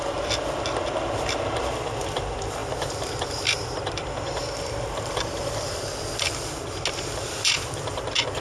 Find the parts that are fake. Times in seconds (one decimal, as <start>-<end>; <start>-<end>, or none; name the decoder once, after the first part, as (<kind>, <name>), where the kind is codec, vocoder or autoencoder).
none